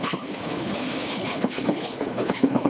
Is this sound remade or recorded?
remade